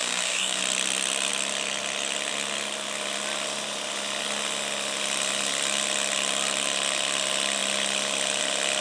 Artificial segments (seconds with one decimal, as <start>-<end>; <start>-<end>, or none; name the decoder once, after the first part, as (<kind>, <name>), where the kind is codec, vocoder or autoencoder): 0.0-0.6 (codec, DAC)